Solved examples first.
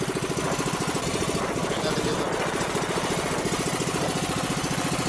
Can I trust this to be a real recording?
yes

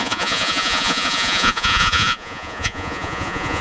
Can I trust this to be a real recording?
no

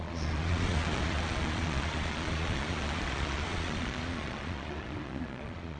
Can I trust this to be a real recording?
no